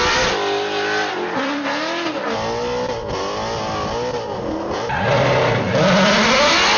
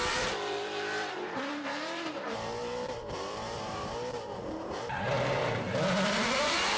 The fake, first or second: second